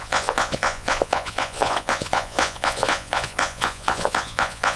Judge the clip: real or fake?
fake